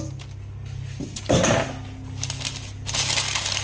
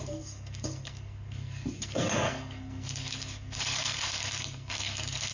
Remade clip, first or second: second